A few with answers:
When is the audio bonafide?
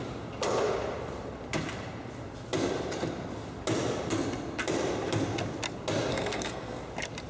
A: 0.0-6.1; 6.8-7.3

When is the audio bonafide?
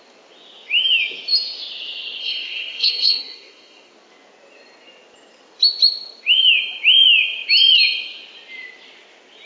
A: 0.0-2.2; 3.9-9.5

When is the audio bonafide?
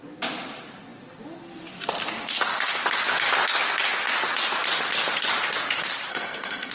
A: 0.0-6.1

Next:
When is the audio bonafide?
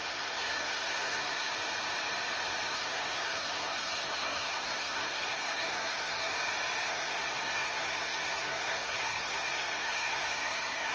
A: 1.5-2.7; 6.3-6.9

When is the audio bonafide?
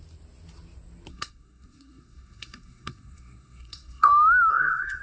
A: 0.0-1.1; 4.1-4.5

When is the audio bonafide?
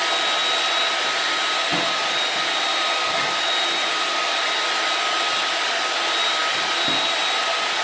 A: 0.0-7.8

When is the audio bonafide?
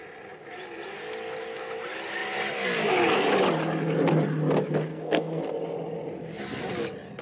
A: 0.0-4.9; 5.4-7.2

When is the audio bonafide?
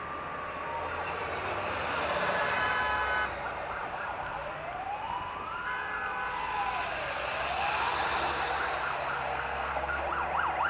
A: 0.0-9.3; 10.0-10.7